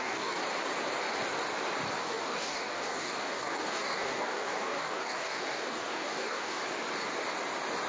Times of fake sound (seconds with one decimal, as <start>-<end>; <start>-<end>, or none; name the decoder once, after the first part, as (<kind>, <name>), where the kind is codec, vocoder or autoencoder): 0.0-0.4 (codec, DAC); 2.0-6.6